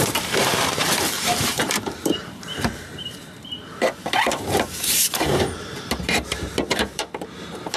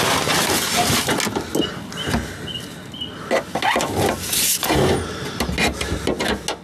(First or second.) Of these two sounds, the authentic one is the second